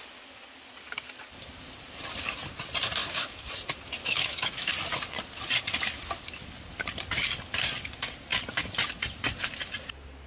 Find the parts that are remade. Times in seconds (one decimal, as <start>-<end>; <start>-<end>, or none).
3.0-3.5; 4.0-4.7